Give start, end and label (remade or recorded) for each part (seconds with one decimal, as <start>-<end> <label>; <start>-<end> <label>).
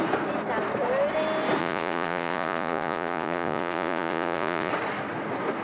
0.0-1.6 recorded; 1.6-4.7 remade; 4.7-5.6 recorded